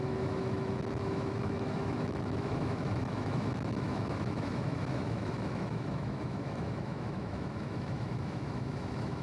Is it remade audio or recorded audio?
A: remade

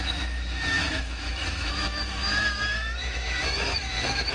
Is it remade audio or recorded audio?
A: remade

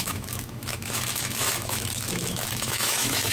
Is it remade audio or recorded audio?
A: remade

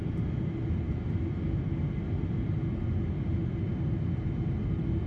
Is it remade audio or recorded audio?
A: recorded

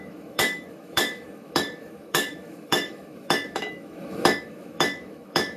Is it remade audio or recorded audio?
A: remade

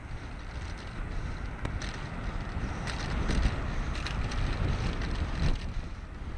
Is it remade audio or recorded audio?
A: recorded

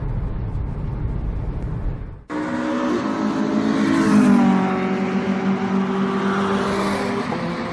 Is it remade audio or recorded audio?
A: recorded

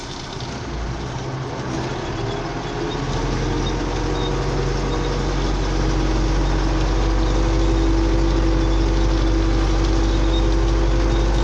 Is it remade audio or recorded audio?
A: recorded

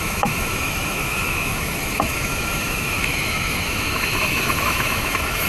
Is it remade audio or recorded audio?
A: remade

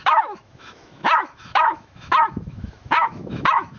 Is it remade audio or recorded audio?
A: remade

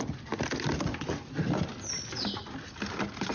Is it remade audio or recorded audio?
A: recorded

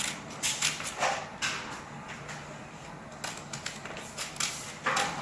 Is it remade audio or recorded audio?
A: recorded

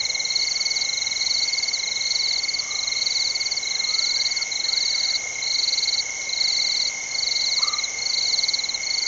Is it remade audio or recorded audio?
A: recorded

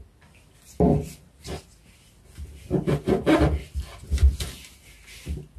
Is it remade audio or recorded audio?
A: recorded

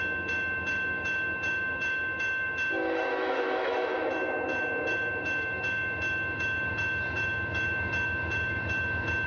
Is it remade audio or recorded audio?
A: remade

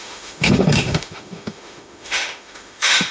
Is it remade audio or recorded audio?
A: remade